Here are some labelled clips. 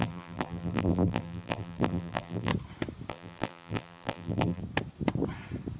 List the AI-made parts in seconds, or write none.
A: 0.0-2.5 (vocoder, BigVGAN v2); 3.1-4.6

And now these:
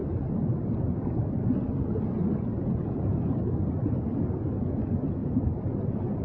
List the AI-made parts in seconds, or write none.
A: 5.2-5.8 (vocoder, BigVGAN v2)

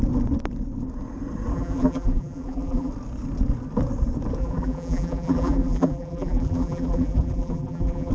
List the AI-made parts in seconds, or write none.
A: 1.5-2.9 (vocoder, BigVGAN v2); 4.4-8.1

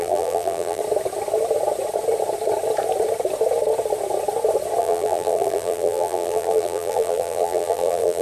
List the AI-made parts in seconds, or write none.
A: 0.0-0.8 (vocoder, BigVGAN v2); 4.8-8.2

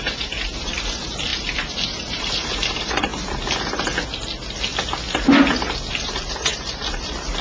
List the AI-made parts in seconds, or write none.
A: 0.0-3.1 (vocoder, BigVGAN v2); 5.9-7.4

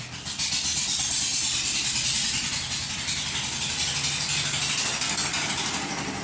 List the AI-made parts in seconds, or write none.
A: none

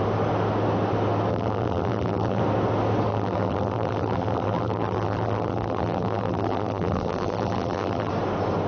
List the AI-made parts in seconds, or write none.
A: 1.3-2.4 (vocoder, BigVGAN v2); 3.1-8.1

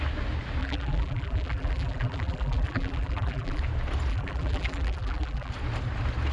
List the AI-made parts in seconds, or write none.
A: 0.6-3.6 (vocoder, BigVGAN v2); 4.1-5.5